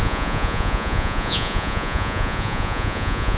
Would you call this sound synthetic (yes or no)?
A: yes